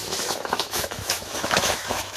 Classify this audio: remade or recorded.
remade